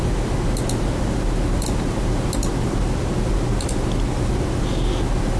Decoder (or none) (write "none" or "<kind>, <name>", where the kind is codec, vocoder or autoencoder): none